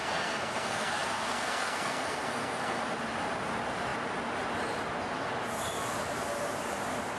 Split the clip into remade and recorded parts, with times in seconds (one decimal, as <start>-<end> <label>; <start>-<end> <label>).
0.0-2.8 remade; 2.8-7.2 recorded